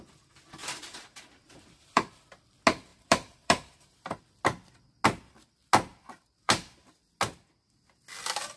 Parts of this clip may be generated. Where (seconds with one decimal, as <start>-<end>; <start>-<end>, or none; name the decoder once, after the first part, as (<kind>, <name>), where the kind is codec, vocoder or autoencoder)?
0.6-2.1 (vocoder, BigVGAN v2); 2.9-4.2; 5.9-6.9